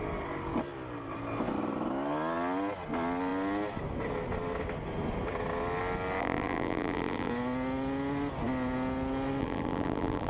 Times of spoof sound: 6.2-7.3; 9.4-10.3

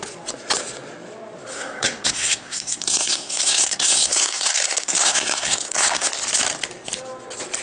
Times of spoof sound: 1.5-6.1

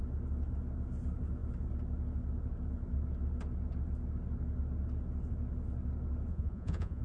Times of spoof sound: 6.3-7.0

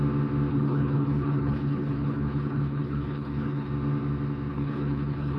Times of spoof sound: 0.5-3.7; 4.5-5.4

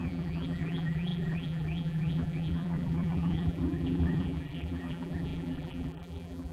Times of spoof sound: 0.0-6.5

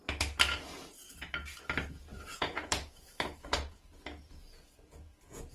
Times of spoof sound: 2.0-5.5

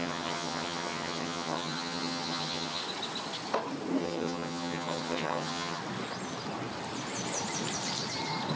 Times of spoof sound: 0.0-2.8; 4.0-5.8